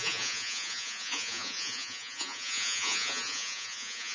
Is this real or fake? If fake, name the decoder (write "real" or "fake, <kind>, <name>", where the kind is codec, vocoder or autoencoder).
fake, vocoder, Vocos